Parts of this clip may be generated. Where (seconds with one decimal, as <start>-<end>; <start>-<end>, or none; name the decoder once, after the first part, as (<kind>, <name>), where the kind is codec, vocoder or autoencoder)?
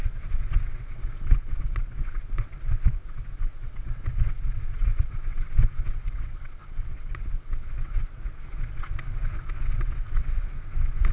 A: 0.0-11.1 (vocoder, WaveNeXt)